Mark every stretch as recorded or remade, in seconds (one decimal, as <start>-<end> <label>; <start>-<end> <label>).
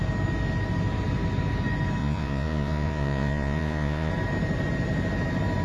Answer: 0.0-2.0 recorded; 2.0-4.1 remade; 4.1-5.6 recorded